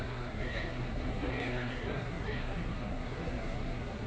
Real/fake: fake